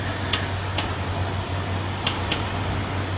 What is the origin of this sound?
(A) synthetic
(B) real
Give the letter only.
B